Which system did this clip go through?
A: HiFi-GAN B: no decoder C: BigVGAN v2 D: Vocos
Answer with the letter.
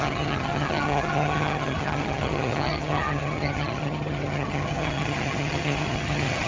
A